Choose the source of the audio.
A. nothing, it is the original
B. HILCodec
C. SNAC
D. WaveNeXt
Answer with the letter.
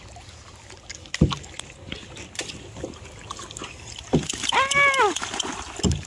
A